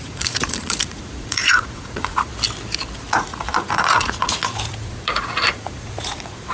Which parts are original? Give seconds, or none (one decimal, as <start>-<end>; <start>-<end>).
2.3-3.1